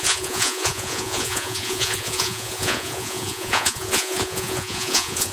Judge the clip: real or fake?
fake